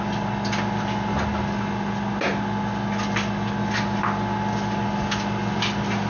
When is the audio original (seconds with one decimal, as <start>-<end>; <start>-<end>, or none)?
0.0-6.1

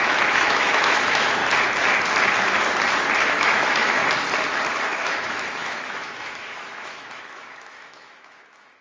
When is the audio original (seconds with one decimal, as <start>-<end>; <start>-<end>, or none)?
1.4-3.4; 4.0-4.8

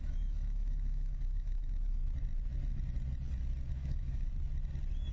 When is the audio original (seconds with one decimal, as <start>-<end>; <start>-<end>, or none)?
2.0-3.7; 4.3-5.1

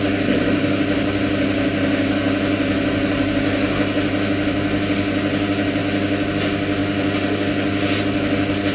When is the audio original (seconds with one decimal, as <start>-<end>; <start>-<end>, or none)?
0.0-8.7

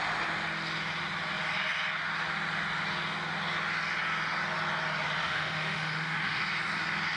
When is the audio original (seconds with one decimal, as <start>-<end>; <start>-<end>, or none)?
0.0-5.2; 6.4-7.2

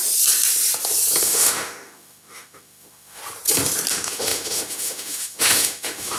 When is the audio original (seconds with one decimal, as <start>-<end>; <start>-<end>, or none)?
0.0-1.2; 3.2-3.9

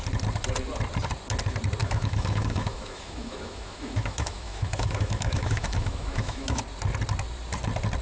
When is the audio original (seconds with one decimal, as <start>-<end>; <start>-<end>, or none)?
0.0-1.8; 6.6-8.0